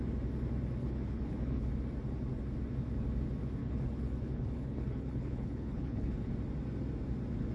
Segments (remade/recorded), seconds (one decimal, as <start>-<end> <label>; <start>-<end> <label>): 0.0-0.8 recorded; 0.8-1.7 remade; 1.7-3.6 recorded; 3.6-6.3 remade; 6.3-7.5 recorded